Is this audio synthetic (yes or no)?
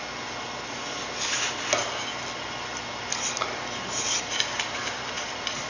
no